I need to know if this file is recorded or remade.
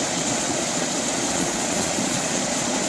remade